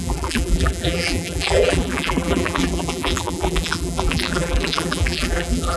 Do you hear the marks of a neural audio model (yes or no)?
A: yes